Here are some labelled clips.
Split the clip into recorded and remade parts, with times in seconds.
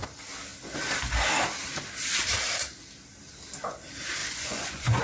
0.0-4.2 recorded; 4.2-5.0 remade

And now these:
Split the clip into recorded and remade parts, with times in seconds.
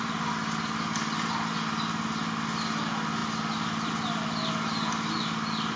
0.0-5.8 recorded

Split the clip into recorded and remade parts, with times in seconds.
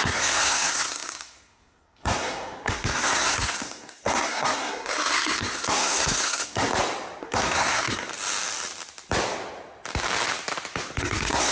0.0-6.7 remade; 6.7-7.2 recorded; 7.2-8.1 remade; 8.1-11.0 recorded; 11.0-11.5 remade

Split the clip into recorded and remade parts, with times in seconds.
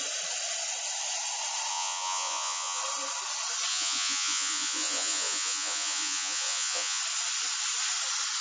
0.0-1.7 recorded; 1.7-2.8 remade; 2.8-3.7 recorded; 3.7-7.0 remade; 7.0-8.4 recorded